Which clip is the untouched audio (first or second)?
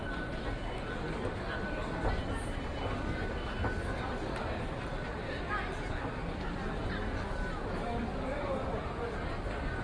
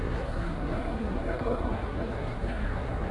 first